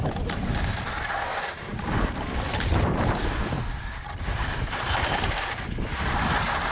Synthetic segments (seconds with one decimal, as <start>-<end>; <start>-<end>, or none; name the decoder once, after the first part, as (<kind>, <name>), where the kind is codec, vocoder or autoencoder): none